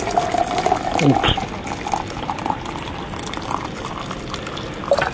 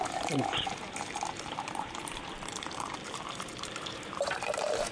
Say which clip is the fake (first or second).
second